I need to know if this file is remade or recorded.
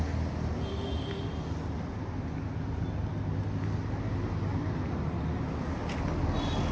recorded